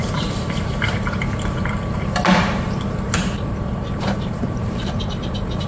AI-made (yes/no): yes